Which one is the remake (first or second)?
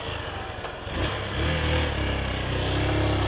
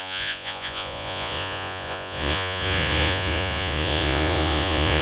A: second